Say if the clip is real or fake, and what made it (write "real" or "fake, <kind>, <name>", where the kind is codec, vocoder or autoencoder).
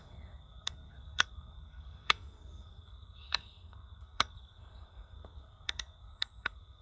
fake, codec, SNAC